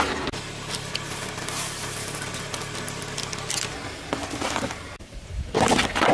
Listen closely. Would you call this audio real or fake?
real